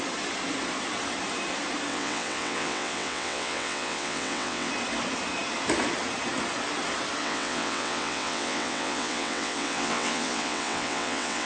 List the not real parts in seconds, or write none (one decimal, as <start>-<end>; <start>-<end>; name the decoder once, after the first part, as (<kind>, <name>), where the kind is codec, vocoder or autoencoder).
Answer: 1.9-4.7 (vocoder, WaveNeXt); 7.2-11.5